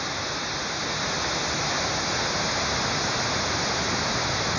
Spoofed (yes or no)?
no